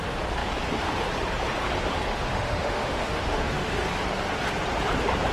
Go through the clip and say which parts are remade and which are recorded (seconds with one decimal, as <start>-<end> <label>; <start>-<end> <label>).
0.0-2.1 recorded; 2.1-3.7 remade; 3.7-5.3 recorded